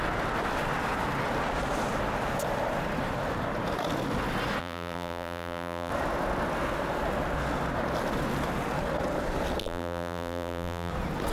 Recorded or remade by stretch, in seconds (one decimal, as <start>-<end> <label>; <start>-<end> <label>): 0.0-4.6 recorded; 4.6-5.9 remade; 5.9-9.6 recorded; 9.6-10.9 remade; 10.9-11.3 recorded